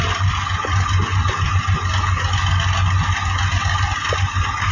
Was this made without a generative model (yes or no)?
yes